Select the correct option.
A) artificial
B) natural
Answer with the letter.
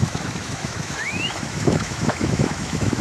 A